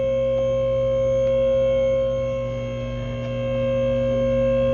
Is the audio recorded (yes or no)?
yes